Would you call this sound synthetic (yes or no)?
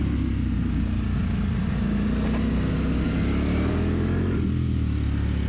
no